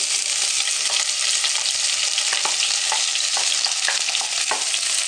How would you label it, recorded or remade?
recorded